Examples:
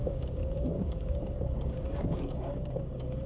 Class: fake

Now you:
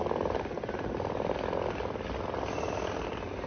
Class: real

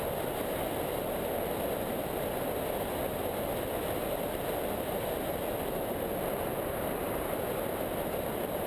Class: real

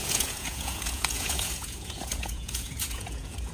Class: fake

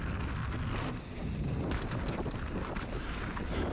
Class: real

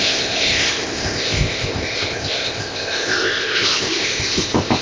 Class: fake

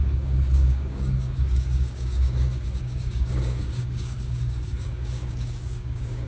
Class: fake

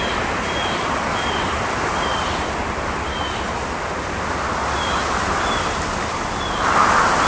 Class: fake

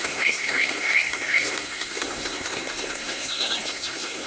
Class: fake